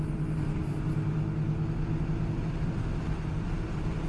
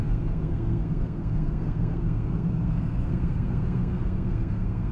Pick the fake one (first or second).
second